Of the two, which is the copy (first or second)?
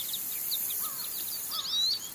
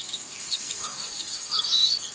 second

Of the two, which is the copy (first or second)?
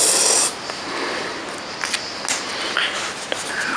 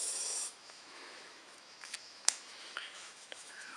second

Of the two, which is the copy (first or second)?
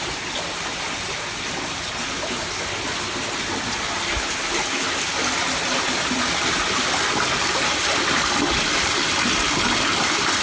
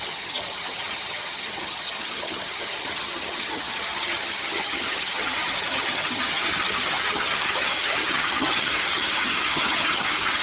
second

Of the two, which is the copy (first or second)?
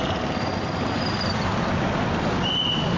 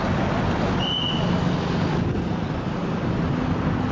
first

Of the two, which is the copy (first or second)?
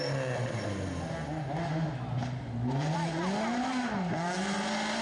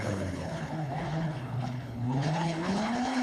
second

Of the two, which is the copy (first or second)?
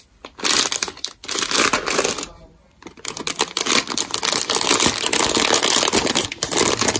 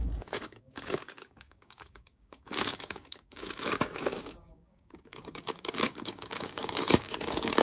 second